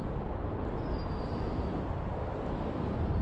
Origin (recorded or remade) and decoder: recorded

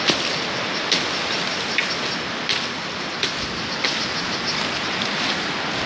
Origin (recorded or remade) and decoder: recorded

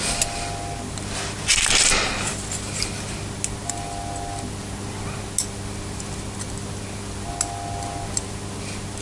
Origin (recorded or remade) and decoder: recorded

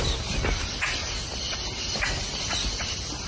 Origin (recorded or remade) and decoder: recorded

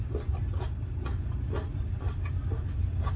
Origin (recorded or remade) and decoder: recorded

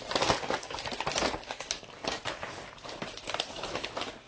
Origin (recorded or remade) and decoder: recorded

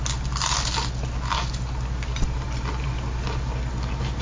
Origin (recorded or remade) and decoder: recorded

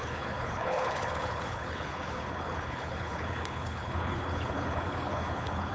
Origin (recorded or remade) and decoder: remade, codec, HILCodec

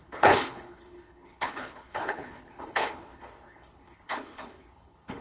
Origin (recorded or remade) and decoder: remade, codec, HILCodec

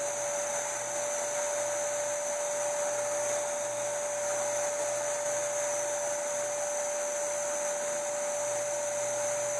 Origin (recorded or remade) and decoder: recorded